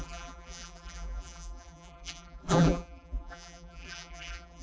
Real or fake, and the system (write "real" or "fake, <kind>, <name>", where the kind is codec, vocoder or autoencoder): fake, vocoder, BigVGAN v2